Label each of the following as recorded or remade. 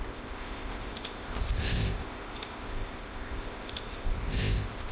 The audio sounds remade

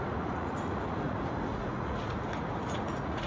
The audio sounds remade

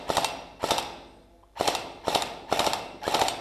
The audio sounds recorded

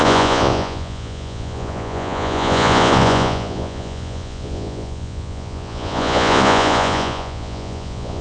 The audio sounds remade